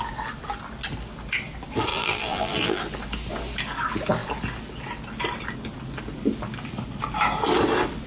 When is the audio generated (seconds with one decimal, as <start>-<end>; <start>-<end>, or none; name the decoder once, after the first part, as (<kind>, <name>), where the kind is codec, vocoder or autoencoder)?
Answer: 1.9-2.8 (vocoder, BigVGAN v2)

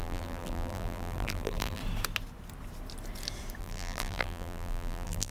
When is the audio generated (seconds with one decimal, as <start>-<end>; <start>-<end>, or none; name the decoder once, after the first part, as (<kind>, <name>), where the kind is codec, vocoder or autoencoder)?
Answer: 0.0-1.8 (vocoder, BigVGAN v2); 3.6-5.3

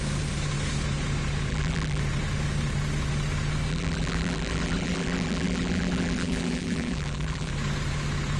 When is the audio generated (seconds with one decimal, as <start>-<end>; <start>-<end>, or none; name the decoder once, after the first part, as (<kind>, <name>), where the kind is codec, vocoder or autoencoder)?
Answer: 1.5-2.0 (vocoder, BigVGAN v2); 3.7-7.5